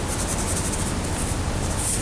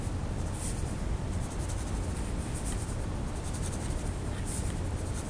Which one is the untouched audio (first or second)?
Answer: first